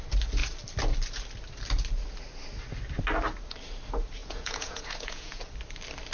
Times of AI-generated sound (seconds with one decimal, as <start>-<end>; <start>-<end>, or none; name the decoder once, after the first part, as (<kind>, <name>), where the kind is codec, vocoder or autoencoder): 4.2-5.4 (vocoder, Vocos)